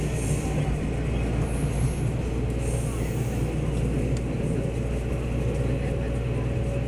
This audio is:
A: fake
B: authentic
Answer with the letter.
B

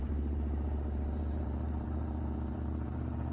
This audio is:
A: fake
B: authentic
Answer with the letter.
A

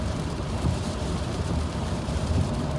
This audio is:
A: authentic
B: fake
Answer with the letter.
B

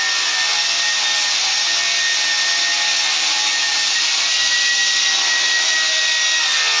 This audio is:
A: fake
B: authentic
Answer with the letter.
B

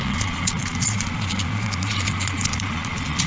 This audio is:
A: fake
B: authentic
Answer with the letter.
A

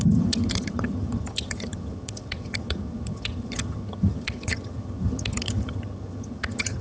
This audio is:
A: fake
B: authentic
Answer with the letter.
A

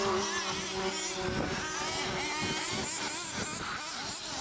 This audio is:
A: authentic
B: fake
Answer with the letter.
A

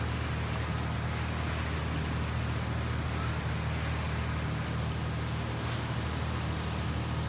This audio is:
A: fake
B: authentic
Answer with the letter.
B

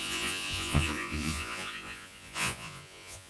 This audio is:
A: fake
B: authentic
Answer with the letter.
A